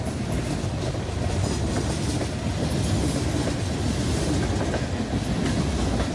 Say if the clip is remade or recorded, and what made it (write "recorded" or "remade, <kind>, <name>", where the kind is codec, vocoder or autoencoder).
recorded